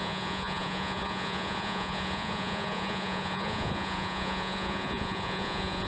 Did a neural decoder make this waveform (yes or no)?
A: yes